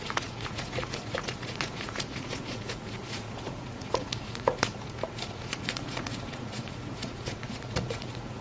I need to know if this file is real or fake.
fake